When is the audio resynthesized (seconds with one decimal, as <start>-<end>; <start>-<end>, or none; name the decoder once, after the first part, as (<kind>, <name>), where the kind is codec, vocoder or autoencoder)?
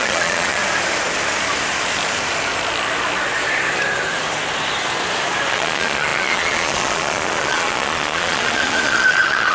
0.0-0.6 (vocoder, Vocos); 5.5-9.5